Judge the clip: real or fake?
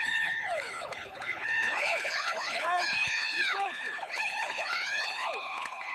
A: fake